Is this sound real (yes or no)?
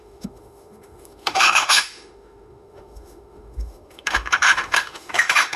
no